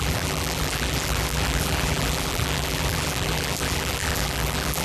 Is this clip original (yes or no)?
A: no